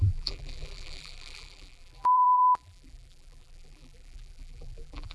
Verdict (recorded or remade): remade